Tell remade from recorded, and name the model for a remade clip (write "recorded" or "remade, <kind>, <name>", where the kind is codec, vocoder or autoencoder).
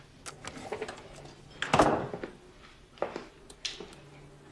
recorded